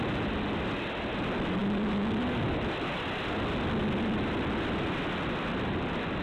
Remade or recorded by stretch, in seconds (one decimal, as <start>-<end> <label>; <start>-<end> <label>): 0.0-6.2 recorded